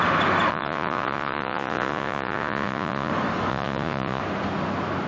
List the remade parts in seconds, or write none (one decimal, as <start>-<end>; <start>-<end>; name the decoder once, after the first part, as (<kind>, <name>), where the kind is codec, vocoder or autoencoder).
0.5-3.1 (vocoder, Vocos); 3.5-4.2